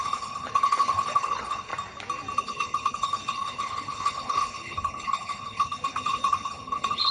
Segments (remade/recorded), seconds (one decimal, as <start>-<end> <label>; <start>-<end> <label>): 0.0-1.7 remade; 1.7-2.4 recorded; 2.4-7.1 remade